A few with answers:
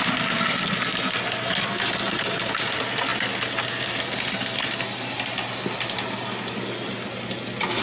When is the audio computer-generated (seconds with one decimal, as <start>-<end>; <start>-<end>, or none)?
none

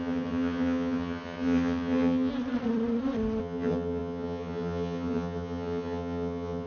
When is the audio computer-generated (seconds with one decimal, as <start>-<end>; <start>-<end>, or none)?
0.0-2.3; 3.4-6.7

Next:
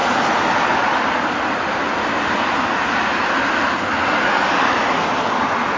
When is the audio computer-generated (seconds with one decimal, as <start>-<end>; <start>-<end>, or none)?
none

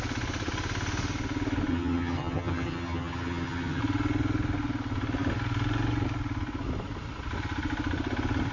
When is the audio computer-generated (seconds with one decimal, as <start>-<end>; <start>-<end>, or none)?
1.7-3.8

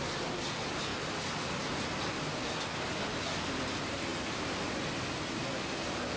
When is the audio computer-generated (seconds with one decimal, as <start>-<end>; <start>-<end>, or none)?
none

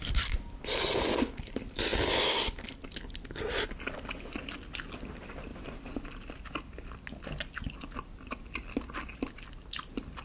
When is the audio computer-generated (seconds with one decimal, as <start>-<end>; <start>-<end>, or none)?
none

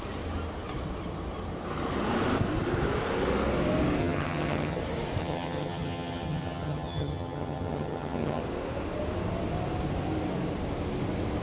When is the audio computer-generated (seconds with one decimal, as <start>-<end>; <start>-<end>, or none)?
4.0-4.8; 5.2-8.4